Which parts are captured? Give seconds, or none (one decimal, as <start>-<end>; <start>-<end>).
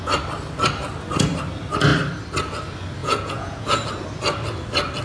0.0-3.0; 3.8-5.0